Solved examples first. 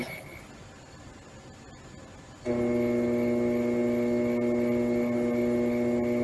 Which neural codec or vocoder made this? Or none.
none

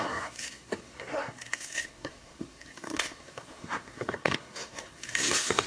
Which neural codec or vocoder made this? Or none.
codec, SNAC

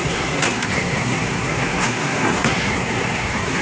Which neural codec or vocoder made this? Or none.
codec, SNAC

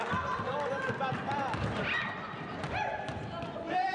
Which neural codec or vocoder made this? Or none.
none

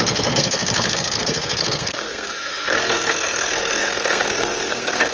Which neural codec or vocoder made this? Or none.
codec, SNAC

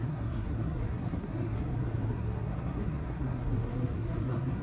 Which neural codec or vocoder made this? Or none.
codec, SNAC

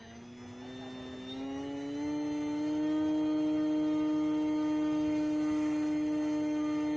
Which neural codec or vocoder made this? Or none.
none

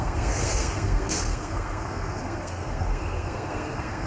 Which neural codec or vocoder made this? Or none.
codec, SNAC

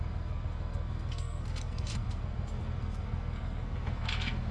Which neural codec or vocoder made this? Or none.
codec, SNAC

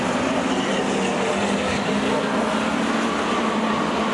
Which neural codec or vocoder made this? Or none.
none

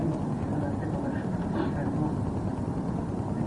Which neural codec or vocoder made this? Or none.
none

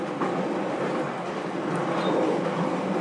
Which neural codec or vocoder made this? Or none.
none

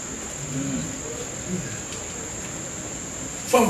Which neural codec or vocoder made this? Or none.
none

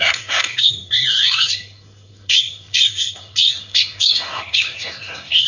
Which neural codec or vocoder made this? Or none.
codec, SNAC